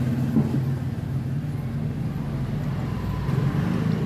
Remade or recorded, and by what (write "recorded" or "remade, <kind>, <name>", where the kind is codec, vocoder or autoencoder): recorded